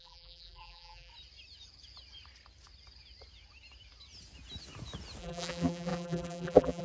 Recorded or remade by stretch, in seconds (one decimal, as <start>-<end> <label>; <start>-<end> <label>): 0.0-1.1 remade; 1.1-5.2 recorded; 5.2-6.8 remade